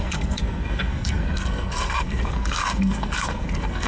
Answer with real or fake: fake